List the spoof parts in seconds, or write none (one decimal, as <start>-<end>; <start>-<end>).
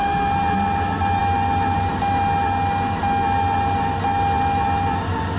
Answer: none